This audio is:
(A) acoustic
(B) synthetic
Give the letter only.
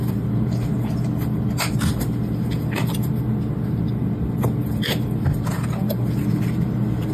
B